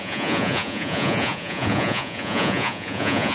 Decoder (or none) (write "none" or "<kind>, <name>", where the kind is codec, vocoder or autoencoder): vocoder, Vocos